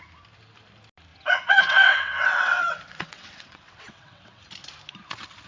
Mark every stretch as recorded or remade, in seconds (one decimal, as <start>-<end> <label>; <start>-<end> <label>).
0.0-1.1 recorded; 1.1-4.4 remade; 4.4-5.5 recorded